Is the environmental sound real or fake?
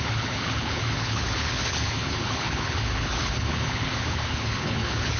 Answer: fake